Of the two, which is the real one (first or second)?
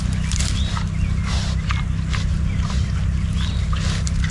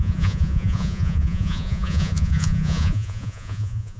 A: first